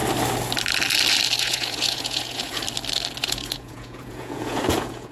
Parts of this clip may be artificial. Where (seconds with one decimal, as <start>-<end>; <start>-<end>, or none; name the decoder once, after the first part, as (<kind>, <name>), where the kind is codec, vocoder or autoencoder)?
1.4-2.6 (vocoder, Vocos); 3.2-5.1